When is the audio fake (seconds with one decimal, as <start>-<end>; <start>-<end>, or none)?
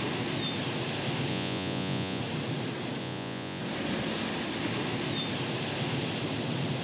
1.3-2.2; 3.0-3.6